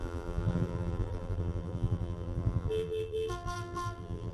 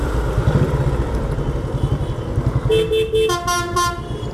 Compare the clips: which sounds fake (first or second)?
first